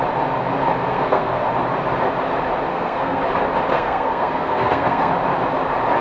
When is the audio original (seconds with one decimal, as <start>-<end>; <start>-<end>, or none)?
0.0-0.9; 1.5-2.7; 3.2-3.7; 5.1-6.0